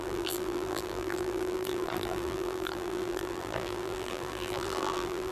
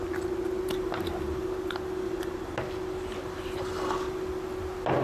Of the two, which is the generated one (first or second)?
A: first